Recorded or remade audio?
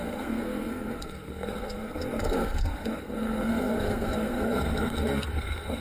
remade